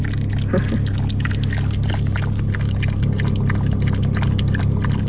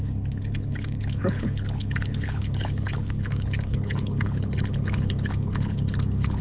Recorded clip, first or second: first